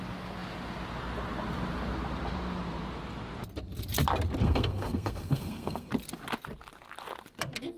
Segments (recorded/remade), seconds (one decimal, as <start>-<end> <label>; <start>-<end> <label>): 0.0-4.4 recorded; 4.4-5.9 remade; 5.9-7.8 recorded